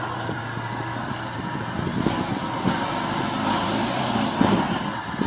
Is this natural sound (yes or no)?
yes